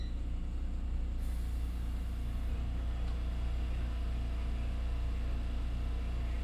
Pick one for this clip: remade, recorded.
recorded